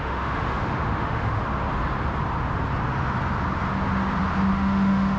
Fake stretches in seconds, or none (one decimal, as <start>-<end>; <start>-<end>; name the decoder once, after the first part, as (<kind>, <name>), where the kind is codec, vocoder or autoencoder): 0.0-1.4 (autoencoder, DAC-VAE); 4.5-5.2